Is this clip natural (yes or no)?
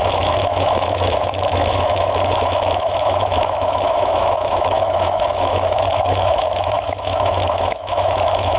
no